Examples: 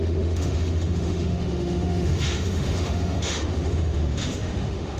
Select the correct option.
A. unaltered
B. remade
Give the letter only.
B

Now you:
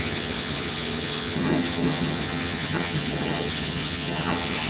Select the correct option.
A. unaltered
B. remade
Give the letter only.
B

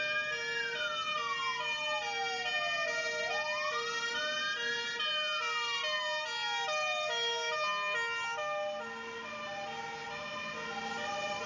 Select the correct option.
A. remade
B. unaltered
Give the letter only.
B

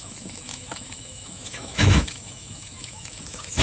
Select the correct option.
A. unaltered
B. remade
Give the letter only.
B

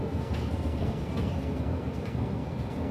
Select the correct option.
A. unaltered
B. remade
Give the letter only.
B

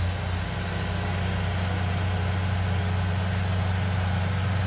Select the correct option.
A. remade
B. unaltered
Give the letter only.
B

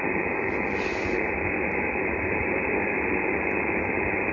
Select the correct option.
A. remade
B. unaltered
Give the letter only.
B